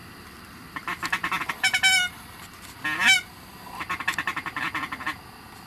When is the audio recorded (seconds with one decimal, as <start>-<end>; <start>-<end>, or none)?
0.0-5.7